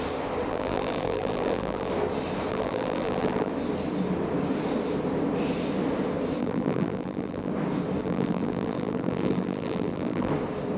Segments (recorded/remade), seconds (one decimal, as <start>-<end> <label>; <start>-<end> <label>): 0.0-0.5 recorded; 0.5-1.9 remade; 1.9-2.5 recorded; 2.5-3.5 remade; 3.5-6.4 recorded; 6.4-7.5 remade; 7.5-8.0 recorded; 8.0-10.3 remade; 10.3-10.8 recorded